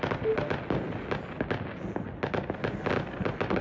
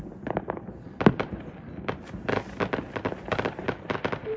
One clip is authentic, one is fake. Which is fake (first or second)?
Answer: second